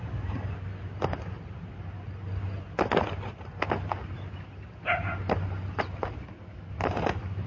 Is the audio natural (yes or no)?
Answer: yes